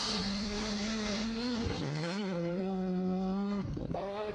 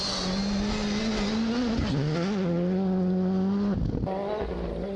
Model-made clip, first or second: first